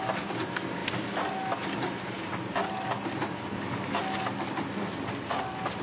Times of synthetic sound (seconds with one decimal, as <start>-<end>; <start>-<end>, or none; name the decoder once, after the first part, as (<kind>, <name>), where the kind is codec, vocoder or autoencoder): none